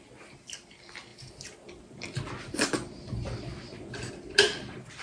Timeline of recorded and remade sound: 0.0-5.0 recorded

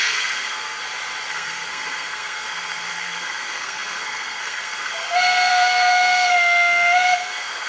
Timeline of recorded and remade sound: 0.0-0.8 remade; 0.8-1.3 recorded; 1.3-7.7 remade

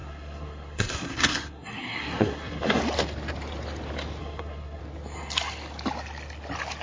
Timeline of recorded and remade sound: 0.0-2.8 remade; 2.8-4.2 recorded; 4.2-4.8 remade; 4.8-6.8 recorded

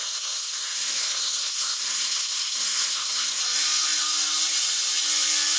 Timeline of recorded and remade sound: 0.0-3.4 remade; 3.4-5.6 recorded

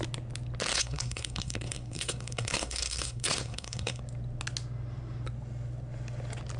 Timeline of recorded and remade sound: 0.0-0.7 recorded; 0.7-4.0 remade; 4.0-6.6 recorded